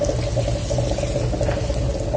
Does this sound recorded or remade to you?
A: recorded